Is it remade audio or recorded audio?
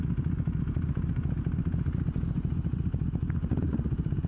recorded